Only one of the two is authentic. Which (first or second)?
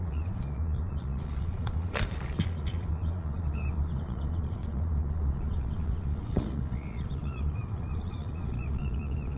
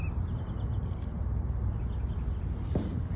second